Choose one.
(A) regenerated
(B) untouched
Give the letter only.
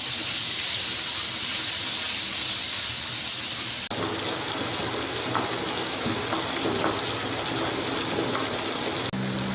B